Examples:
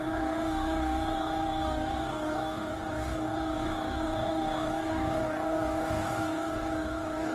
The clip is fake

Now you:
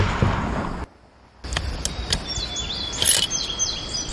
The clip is real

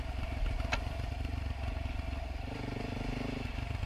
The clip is real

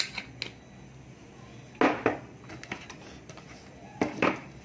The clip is real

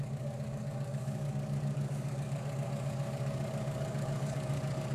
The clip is fake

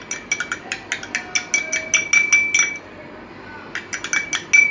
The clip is real